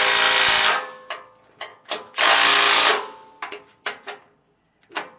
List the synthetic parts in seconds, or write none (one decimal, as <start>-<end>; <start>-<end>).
none